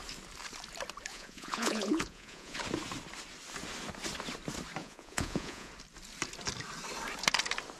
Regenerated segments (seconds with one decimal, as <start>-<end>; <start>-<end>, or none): 1.1-2.6; 4.8-5.7